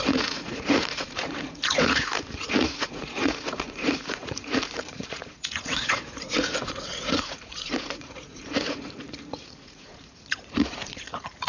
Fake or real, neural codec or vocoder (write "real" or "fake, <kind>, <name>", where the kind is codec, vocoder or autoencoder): fake, vocoder, Vocos